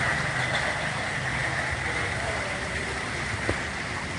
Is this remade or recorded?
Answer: recorded